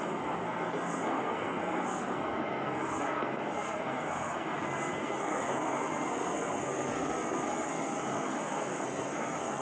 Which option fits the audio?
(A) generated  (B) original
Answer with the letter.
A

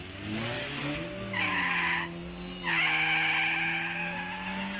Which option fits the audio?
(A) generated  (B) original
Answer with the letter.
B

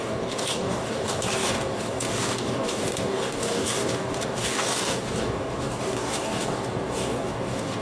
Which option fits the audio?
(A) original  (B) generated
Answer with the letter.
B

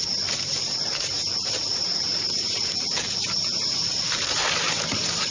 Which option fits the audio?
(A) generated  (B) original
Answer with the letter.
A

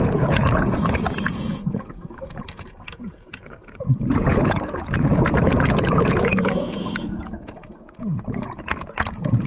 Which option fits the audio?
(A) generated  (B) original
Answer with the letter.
A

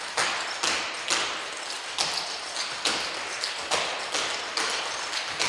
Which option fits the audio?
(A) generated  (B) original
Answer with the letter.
B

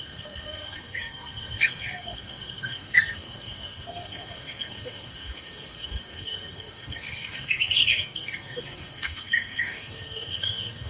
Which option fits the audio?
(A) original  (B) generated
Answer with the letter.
B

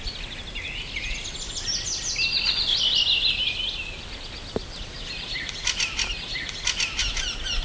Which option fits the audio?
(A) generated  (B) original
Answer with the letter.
B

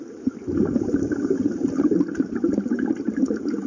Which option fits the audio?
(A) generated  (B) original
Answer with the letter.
B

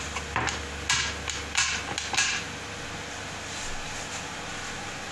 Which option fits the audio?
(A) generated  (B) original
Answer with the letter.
B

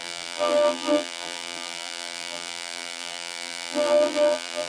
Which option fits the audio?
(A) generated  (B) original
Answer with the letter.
A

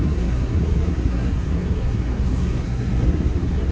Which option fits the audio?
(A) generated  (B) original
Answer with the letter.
A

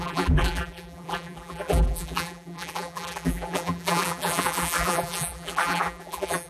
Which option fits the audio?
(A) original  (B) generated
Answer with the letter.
B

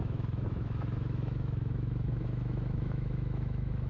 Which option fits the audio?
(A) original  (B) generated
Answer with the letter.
B